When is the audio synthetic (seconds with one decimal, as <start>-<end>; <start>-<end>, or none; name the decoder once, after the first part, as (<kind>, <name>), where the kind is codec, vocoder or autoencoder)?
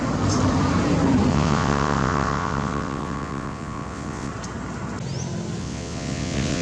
1.3-4.3 (vocoder, WaveNeXt); 5.6-6.6